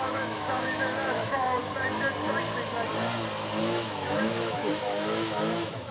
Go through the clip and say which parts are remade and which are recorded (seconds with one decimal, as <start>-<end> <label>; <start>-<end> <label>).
0.0-1.6 remade; 1.6-3.6 recorded; 3.6-5.9 remade